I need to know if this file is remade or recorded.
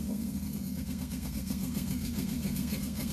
remade